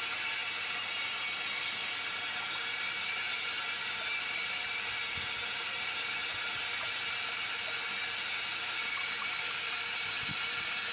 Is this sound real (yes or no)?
yes